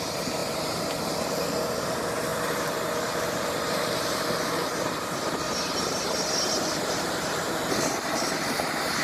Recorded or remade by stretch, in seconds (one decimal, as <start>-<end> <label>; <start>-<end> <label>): 0.0-9.0 remade